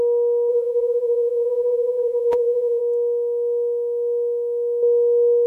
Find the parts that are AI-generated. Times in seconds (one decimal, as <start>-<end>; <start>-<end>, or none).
0.5-2.8